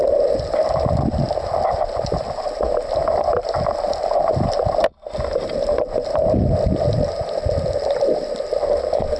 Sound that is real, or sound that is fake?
real